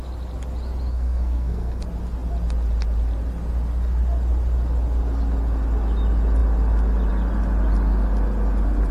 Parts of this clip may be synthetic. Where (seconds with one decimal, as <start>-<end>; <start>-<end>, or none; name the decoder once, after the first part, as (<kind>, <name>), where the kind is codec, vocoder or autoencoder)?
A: 0.9-1.8 (codec, SNAC)